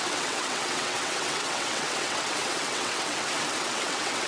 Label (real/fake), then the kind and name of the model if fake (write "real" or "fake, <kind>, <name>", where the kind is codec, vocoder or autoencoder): fake, vocoder, WaveNeXt